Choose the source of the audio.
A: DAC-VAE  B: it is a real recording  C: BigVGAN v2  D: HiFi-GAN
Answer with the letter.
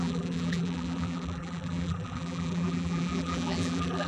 C